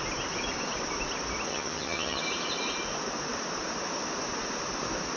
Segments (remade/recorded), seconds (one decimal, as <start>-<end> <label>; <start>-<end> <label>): 0.0-1.5 recorded; 1.5-2.2 remade; 2.2-5.2 recorded